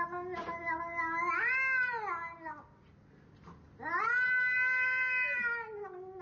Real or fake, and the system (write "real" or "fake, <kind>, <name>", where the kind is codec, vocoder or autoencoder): real